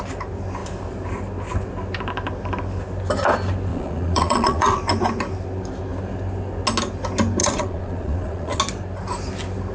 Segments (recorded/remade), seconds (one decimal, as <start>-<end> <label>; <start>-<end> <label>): 0.0-3.7 recorded; 3.7-4.8 remade; 4.8-7.4 recorded; 7.4-8.6 remade; 8.6-9.7 recorded